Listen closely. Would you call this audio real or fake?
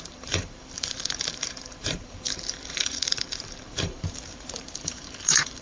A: fake